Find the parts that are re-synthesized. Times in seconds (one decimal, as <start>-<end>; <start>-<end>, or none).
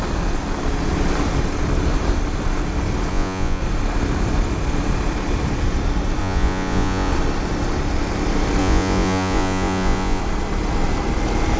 3.1-3.6; 6.2-7.1; 8.6-10.2